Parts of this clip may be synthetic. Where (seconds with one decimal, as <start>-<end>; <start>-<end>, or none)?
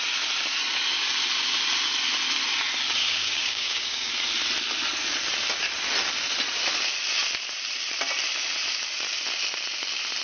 3.0-4.1